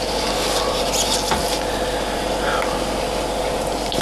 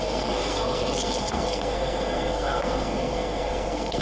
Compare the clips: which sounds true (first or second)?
first